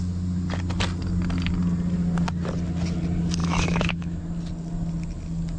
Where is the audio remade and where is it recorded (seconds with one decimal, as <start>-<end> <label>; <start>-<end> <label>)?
0.0-3.4 recorded; 3.4-4.2 remade; 4.2-5.6 recorded